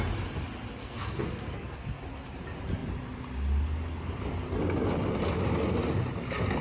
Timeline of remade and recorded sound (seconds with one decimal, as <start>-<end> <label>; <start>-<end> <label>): 0.0-0.8 recorded; 0.8-2.0 remade; 2.0-6.6 recorded